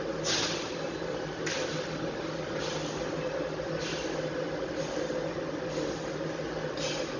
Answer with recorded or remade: recorded